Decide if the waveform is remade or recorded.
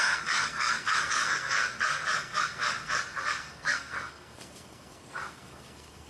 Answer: remade